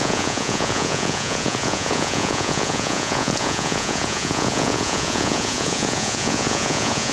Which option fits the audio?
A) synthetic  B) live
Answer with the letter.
A